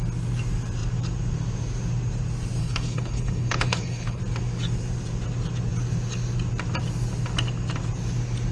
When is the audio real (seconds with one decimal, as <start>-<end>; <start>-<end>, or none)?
0.0-2.6; 4.2-8.5